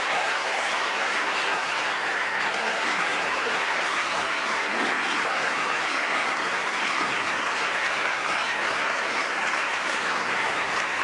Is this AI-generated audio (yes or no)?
yes